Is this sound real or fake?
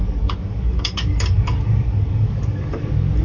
fake